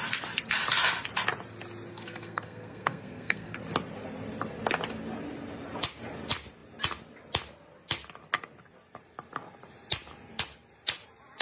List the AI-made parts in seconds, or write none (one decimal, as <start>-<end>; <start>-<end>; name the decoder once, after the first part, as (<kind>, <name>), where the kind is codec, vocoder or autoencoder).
1.9-3.6 (codec, SNAC)